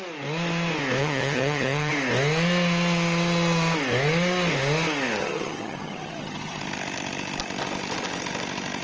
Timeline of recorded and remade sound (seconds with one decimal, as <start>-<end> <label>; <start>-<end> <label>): 0.0-1.0 recorded; 1.0-1.9 remade; 1.9-5.2 recorded; 5.2-6.6 remade; 6.6-8.8 recorded